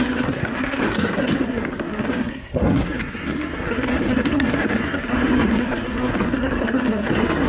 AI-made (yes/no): yes